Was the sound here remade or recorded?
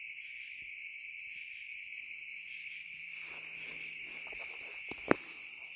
recorded